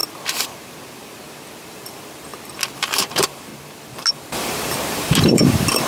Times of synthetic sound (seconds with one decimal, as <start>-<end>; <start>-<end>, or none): 1.7-2.3; 2.8-3.5; 4.1-5.9